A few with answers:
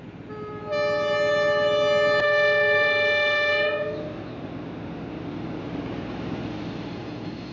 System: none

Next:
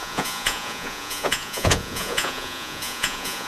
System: vocoder, Vocos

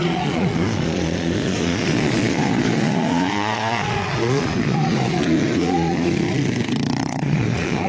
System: vocoder, Vocos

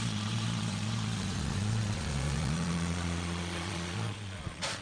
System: vocoder, Vocos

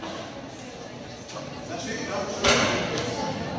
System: vocoder, BigVGAN v2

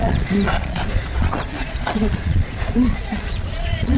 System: vocoder, Vocos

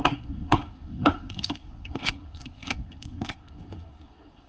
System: codec, SNAC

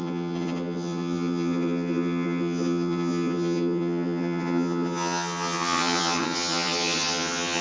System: vocoder, HiFi-GAN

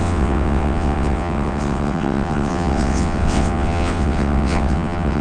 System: vocoder, WaveNeXt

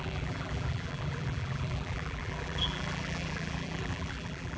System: vocoder, BigVGAN v2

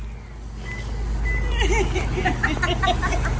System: none